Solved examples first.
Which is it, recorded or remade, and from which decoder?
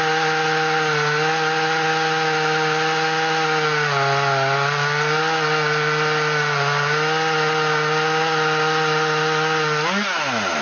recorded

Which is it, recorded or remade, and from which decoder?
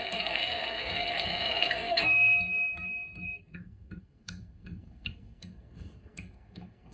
remade, codec, SNAC